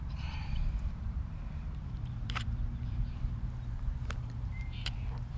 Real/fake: fake